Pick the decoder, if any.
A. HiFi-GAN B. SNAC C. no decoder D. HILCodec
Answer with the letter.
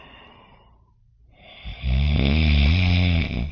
C